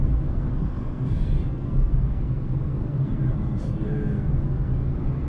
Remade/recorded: remade